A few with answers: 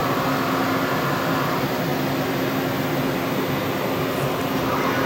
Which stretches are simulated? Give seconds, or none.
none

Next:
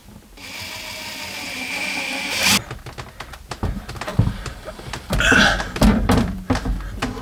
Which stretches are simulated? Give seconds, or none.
1.1-2.2 (vocoder, BigVGAN v2); 4.1-6.5

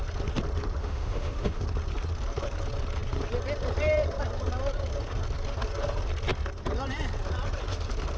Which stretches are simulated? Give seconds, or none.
0.8-1.6 (autoencoder, DAC-VAE)

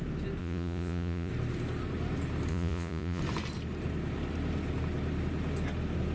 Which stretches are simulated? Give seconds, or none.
0.4-1.3 (vocoder, Vocos); 2.5-3.2

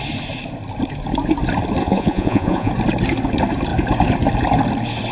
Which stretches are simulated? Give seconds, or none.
1.8-2.7 (vocoder, Vocos)

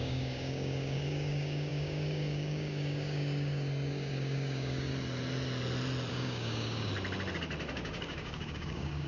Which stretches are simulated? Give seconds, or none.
0.0-4.9 (codec, DAC); 6.1-6.9; 7.7-9.1

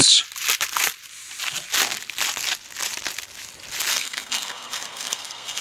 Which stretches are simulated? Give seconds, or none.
3.9-5.6 (codec, SNAC)